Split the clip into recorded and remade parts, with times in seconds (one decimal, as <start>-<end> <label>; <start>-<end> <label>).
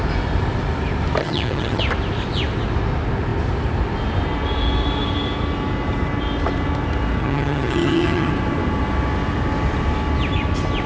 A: 0.0-1.2 recorded; 1.2-1.8 remade; 1.8-7.2 recorded; 7.2-8.3 remade; 8.3-10.9 recorded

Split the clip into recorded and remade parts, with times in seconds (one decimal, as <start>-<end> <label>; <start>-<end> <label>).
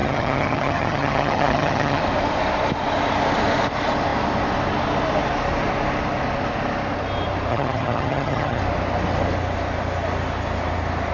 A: 0.0-2.0 remade; 2.0-7.5 recorded; 7.5-8.6 remade; 8.6-11.1 recorded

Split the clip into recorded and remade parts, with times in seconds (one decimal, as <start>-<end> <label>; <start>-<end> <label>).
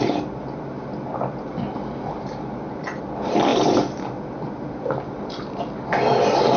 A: 0.0-3.5 recorded; 3.5-4.7 remade; 4.7-6.6 recorded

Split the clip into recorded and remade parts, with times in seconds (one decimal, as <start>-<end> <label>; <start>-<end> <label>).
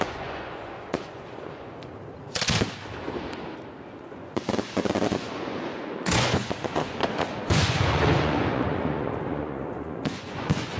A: 0.0-1.8 remade; 1.8-3.7 recorded; 3.7-10.8 remade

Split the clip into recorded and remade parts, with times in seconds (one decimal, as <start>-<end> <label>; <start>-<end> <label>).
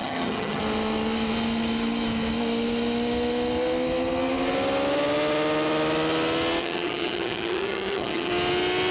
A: 0.0-0.6 remade; 0.6-6.6 recorded; 6.6-8.3 remade; 8.3-8.9 recorded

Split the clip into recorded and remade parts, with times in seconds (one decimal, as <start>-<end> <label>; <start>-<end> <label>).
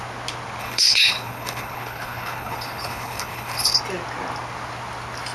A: 0.0-0.6 recorded; 0.6-3.8 remade; 3.8-5.3 recorded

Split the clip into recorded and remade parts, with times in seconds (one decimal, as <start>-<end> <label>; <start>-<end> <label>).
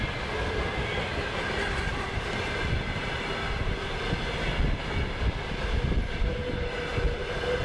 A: 0.0-7.6 recorded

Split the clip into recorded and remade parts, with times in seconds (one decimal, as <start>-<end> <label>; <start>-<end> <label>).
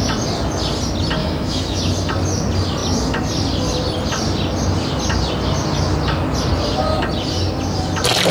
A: 0.0-1.2 recorded; 1.2-1.8 remade; 1.8-8.3 recorded